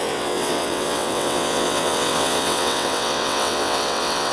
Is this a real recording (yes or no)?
no